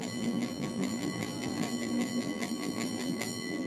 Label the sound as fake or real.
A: fake